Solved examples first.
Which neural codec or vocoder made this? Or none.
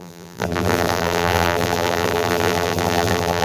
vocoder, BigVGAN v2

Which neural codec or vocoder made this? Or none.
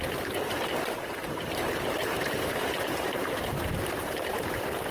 vocoder, BigVGAN v2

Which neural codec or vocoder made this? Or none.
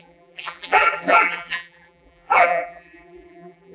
vocoder, BigVGAN v2